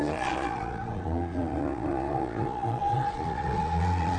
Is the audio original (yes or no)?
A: no